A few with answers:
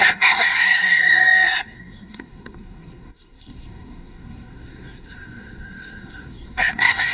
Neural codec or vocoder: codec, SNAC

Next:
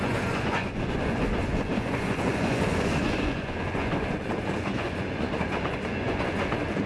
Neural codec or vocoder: vocoder, Vocos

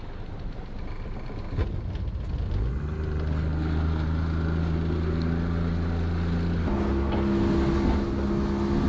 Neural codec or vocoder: none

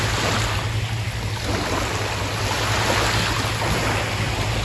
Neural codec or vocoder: none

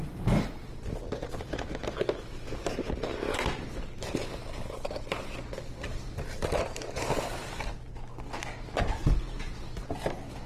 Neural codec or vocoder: none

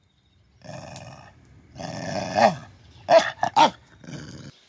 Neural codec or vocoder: none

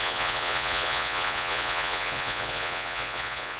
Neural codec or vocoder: vocoder, Vocos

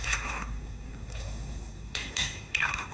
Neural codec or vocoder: codec, SNAC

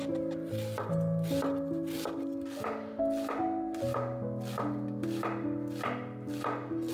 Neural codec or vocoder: none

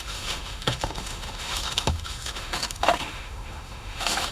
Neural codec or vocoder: autoencoder, DAC-VAE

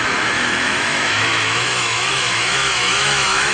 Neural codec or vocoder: autoencoder, DAC-VAE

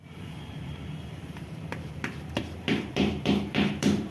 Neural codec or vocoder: vocoder, BigVGAN v2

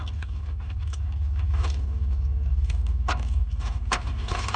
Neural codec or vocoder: codec, DAC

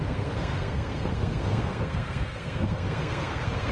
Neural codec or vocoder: codec, SNAC